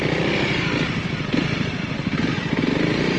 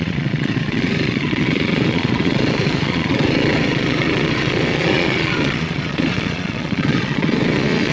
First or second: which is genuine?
first